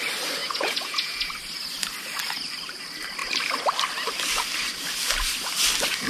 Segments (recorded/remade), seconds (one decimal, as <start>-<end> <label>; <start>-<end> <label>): 0.0-0.4 recorded; 0.4-1.3 remade; 1.3-6.1 recorded